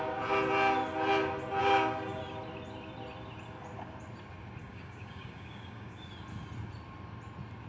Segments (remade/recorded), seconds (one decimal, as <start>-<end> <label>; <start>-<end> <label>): 0.0-1.6 recorded; 1.6-2.2 remade; 2.2-4.6 recorded; 4.6-6.1 remade; 6.1-7.7 recorded